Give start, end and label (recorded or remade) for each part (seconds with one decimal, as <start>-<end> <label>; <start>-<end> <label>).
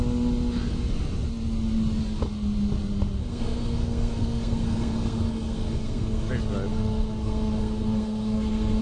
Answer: 0.0-3.2 recorded; 3.2-6.3 remade; 6.3-6.7 recorded; 6.7-8.8 remade